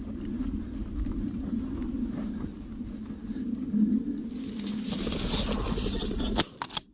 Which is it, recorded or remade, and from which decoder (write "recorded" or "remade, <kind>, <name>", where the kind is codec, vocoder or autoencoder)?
recorded